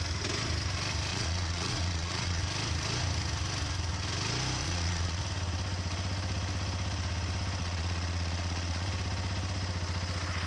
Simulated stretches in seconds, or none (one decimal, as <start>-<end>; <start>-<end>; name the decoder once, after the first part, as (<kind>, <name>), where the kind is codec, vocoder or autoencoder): 1.1-2.4 (vocoder, Vocos); 4.6-5.2; 7.6-8.9